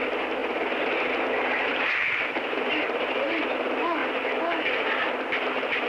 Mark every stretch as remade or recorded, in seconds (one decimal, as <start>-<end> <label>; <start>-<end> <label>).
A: 0.0-1.6 recorded; 1.6-3.4 remade; 3.4-4.0 recorded; 4.0-5.3 remade; 5.3-5.9 recorded